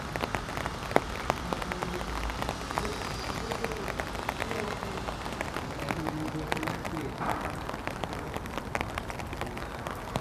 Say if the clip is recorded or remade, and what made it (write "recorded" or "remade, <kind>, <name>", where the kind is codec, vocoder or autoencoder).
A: recorded